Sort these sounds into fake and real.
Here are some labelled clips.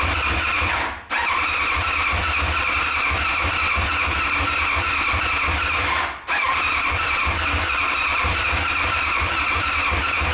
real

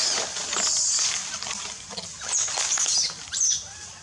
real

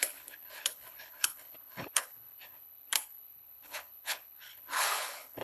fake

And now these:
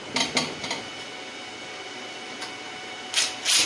real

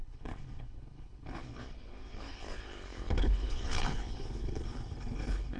fake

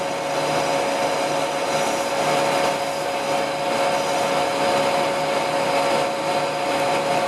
real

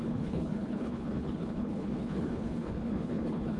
fake